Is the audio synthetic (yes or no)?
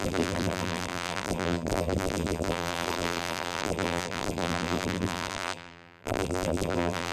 yes